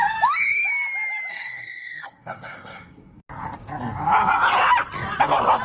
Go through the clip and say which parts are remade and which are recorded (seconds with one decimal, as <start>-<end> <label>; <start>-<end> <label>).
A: 0.0-1.3 recorded; 1.3-3.2 remade; 3.2-5.6 recorded